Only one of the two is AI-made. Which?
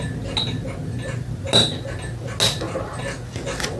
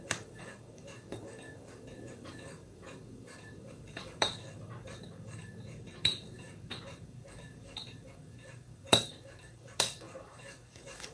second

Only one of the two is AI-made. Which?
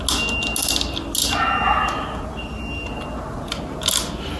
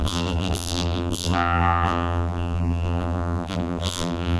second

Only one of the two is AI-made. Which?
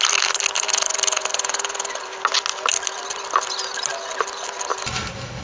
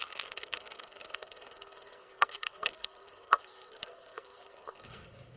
second